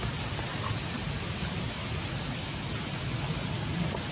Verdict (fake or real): real